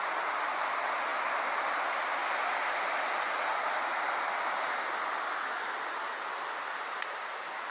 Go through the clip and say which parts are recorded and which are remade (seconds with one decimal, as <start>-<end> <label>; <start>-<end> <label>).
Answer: 0.0-7.7 recorded